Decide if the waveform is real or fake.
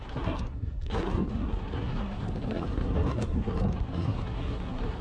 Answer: fake